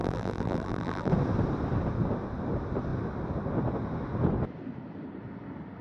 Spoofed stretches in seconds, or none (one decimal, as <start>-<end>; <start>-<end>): 0.0-1.1